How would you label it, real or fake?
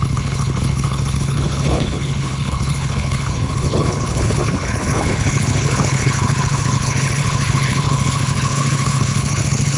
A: fake